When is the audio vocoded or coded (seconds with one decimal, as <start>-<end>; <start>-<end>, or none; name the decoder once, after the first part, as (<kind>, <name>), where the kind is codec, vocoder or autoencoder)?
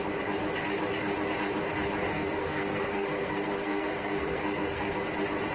2.1-5.0 (codec, SNAC)